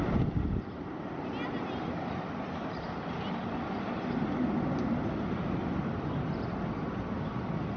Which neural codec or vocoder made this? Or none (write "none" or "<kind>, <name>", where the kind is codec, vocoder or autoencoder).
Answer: none